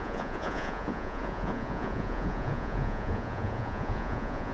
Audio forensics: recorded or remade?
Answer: remade